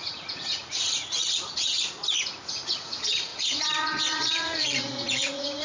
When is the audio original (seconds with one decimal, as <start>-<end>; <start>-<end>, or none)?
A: 1.8-2.7